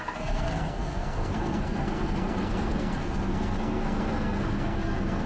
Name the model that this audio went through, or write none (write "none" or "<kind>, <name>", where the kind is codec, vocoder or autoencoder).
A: codec, SNAC